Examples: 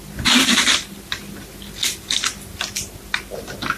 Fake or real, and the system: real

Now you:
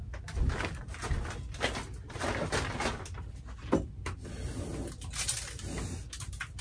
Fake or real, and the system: real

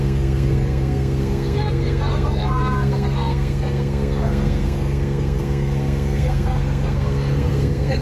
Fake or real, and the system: fake, codec, SNAC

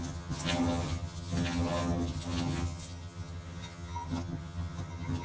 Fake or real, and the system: fake, vocoder, HiFi-GAN